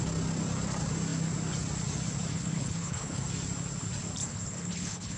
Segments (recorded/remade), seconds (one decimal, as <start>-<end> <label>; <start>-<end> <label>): 0.0-2.3 recorded; 2.3-3.2 remade; 3.2-4.2 recorded; 4.2-5.2 remade